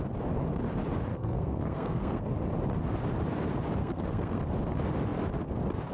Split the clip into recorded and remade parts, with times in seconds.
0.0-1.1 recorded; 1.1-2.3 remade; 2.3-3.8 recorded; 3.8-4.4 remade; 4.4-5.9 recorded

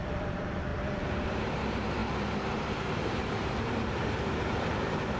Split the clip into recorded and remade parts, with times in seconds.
0.0-5.2 remade

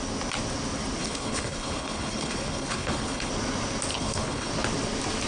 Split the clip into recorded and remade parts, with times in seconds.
0.0-1.0 recorded; 1.0-3.3 remade; 3.3-3.9 recorded; 3.9-4.5 remade; 4.5-5.3 recorded

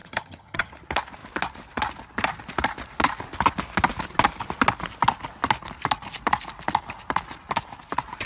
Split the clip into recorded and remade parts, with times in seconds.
0.0-0.7 remade; 0.7-8.3 recorded